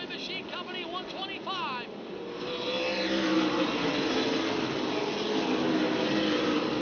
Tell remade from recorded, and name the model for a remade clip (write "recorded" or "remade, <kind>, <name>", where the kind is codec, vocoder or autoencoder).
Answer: recorded